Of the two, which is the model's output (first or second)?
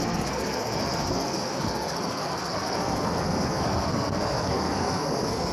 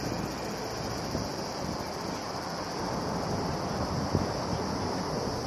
first